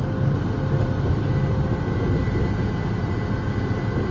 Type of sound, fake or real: real